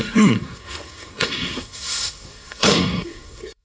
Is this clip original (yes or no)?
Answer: no